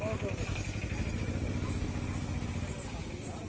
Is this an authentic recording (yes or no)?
yes